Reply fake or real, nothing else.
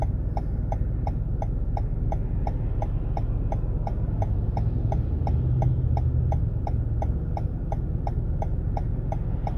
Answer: real